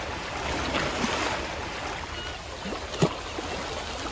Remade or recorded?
recorded